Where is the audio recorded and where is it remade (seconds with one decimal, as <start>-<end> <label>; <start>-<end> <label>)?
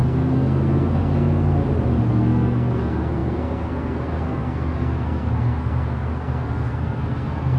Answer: 0.0-1.6 remade; 1.6-2.1 recorded; 2.1-7.6 remade